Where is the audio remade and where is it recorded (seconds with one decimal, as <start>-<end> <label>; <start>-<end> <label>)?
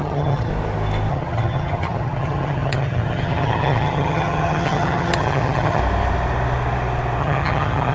0.0-0.5 remade; 0.5-1.1 recorded; 1.1-5.8 remade; 5.8-7.2 recorded; 7.2-7.9 remade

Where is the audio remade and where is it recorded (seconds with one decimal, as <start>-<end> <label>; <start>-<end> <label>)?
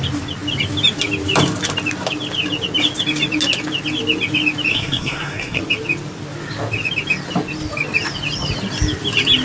0.0-4.7 recorded; 4.7-5.6 remade; 5.6-9.4 recorded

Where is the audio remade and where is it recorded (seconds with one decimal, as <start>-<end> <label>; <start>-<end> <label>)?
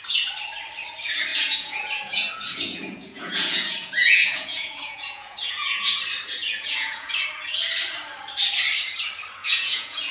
0.0-1.3 recorded; 1.3-6.0 remade; 6.0-6.4 recorded; 6.4-7.1 remade; 7.1-9.4 recorded; 9.4-10.1 remade